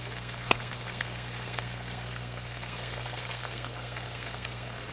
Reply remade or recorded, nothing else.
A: remade